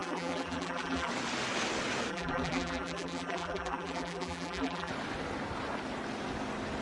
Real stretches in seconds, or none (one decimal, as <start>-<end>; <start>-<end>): 1.1-2.1; 4.9-6.8